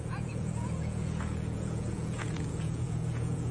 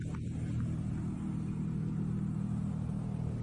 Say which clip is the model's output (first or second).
first